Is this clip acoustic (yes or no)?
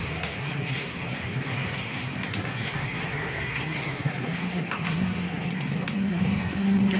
no